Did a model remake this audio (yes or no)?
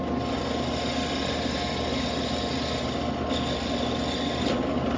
no